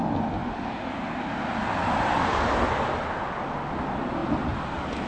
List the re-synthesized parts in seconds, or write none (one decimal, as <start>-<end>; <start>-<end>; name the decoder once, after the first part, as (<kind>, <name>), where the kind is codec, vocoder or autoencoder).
none